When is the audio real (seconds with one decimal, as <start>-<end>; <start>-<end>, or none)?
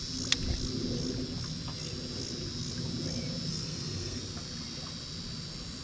0.0-3.5; 4.2-5.8